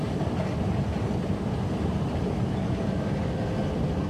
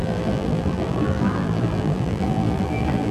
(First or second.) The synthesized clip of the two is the second